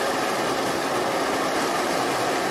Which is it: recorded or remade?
recorded